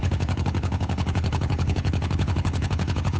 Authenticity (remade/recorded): remade